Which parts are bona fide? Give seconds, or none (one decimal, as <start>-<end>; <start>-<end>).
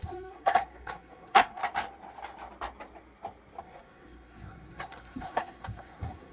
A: 1.6-3.6